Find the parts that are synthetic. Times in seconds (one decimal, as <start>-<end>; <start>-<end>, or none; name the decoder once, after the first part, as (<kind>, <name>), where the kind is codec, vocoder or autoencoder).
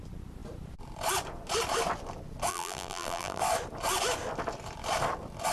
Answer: 2.5-3.4 (vocoder, BigVGAN v2)